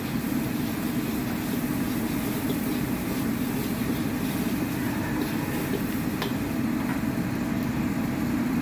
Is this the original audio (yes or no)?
yes